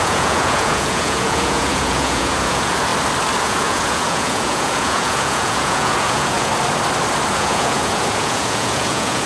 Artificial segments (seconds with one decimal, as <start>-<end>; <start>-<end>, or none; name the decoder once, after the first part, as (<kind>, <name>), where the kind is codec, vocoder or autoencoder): 0.0-2.9 (vocoder, Vocos); 3.4-6.5; 7.3-9.3